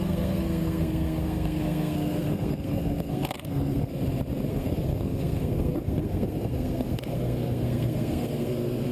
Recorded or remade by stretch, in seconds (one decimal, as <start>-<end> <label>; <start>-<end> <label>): 0.0-3.9 remade; 3.9-4.5 recorded; 4.5-8.9 remade